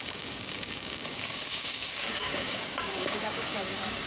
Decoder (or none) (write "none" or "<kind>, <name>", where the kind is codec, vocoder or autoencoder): codec, DAC